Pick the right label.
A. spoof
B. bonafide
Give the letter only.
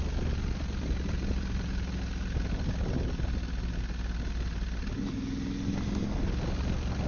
B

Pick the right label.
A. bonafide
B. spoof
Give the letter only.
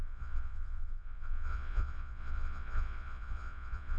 B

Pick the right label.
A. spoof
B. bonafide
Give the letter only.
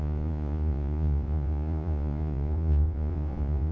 A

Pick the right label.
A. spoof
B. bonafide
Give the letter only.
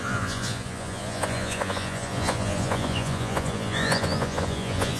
A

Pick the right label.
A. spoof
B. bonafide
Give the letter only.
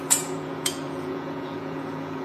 A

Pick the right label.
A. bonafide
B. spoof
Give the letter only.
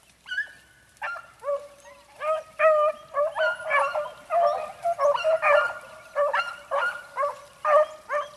A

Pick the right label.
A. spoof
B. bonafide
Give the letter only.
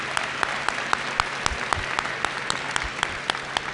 B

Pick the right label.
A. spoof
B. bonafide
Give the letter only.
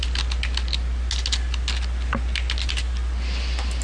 B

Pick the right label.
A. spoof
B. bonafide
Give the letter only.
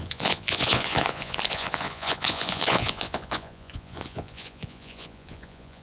A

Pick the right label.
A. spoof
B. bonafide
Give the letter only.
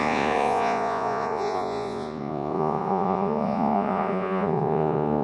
A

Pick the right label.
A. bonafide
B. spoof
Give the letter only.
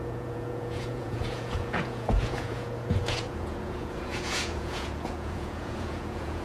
B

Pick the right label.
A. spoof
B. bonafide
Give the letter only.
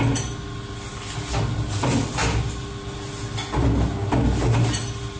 B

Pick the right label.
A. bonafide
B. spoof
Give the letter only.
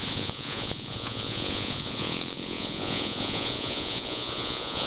B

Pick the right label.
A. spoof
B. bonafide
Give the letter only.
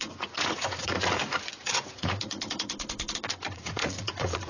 A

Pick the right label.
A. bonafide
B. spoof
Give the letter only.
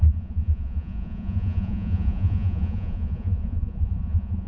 B